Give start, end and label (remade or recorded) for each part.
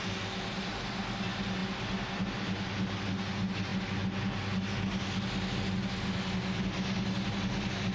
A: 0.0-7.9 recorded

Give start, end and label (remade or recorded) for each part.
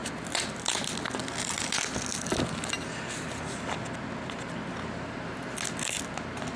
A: 0.0-6.6 recorded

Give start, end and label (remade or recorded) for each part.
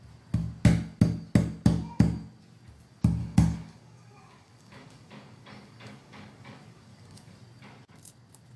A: 0.0-3.2 recorded; 3.2-7.3 remade; 7.3-8.6 recorded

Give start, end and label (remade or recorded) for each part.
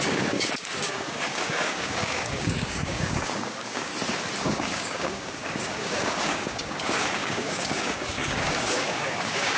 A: 0.0-3.9 remade; 3.9-4.4 recorded; 4.4-9.6 remade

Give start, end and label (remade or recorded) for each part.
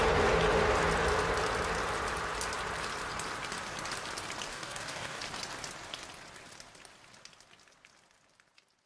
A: 0.0-4.5 recorded; 4.5-5.2 remade; 5.2-8.9 recorded